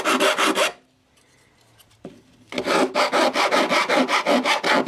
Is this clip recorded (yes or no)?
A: yes